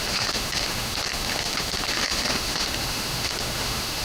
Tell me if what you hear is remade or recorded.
remade